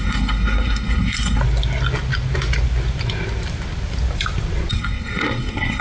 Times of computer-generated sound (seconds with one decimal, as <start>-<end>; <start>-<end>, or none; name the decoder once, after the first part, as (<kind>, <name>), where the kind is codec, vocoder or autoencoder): 0.0-1.4 (codec, SNAC); 4.7-5.8